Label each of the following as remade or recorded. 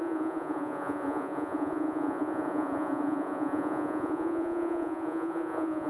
remade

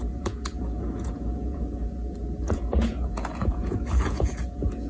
remade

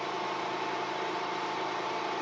remade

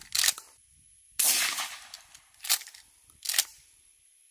recorded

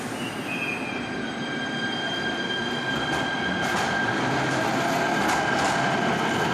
recorded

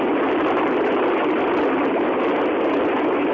recorded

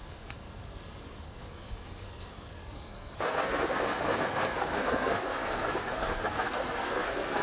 remade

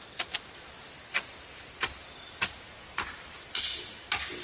recorded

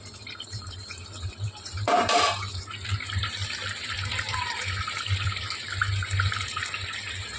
remade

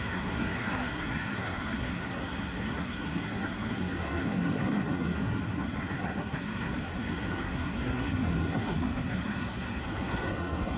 remade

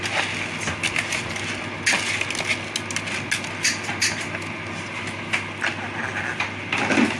recorded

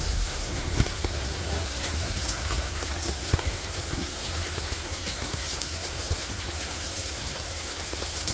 remade